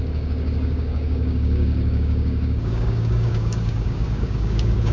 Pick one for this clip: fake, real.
fake